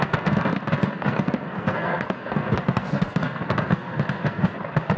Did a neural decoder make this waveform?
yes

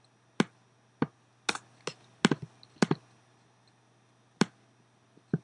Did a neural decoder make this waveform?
no